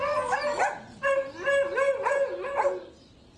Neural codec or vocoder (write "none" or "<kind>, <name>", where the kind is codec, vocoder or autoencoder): none